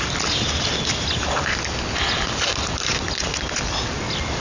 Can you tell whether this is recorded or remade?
recorded